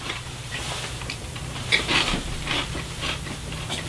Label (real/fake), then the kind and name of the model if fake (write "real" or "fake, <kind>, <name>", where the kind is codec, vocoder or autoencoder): fake, vocoder, BigVGAN v2